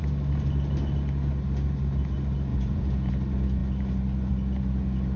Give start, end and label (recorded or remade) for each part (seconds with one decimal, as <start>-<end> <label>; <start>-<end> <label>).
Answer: 0.0-2.5 recorded; 2.5-3.1 remade; 3.1-5.2 recorded